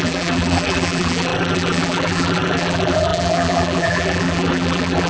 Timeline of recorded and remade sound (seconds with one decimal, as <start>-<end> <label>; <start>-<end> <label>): 0.0-5.1 remade